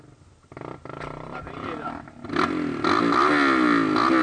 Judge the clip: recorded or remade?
recorded